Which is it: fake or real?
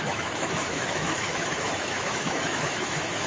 fake